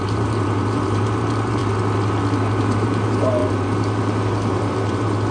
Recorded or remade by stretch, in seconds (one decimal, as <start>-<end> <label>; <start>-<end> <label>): 0.0-1.6 remade; 1.6-2.6 recorded; 2.6-5.3 remade